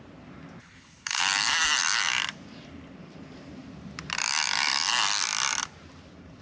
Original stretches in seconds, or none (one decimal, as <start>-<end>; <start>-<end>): 0.0-0.6; 1.2-6.4